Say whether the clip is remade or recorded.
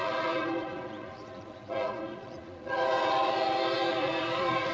remade